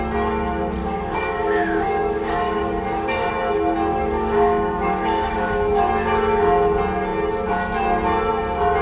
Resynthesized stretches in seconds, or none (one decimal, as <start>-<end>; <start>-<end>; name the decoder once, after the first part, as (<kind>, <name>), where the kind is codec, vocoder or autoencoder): 0.8-3.3 (codec, DAC); 3.9-5.9